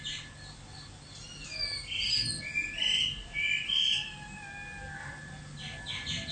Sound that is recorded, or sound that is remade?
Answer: recorded